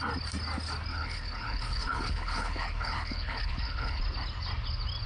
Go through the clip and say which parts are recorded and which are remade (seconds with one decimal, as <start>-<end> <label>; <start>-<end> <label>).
0.0-0.9 recorded; 0.9-4.0 remade; 4.0-5.1 recorded